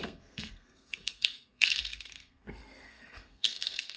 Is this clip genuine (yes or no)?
no